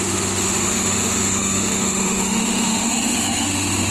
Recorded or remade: remade